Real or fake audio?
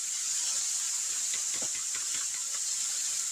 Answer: real